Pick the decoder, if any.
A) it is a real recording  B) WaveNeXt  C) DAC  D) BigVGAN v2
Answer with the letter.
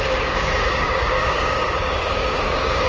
C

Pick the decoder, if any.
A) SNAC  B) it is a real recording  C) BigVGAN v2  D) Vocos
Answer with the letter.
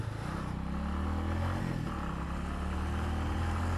B